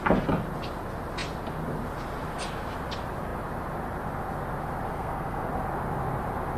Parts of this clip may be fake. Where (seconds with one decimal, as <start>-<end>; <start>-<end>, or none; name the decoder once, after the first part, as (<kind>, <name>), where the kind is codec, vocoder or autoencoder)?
4.9-5.5 (codec, SNAC)